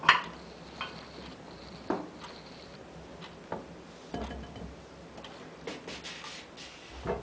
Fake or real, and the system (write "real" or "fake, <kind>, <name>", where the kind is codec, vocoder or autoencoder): real